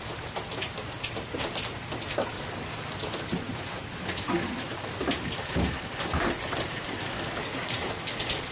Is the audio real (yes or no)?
yes